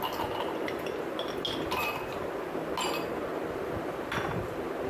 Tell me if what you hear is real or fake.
real